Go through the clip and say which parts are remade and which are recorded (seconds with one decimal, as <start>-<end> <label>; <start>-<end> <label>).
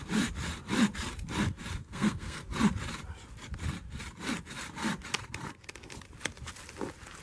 0.0-1.8 recorded; 1.8-2.4 remade; 2.4-7.2 recorded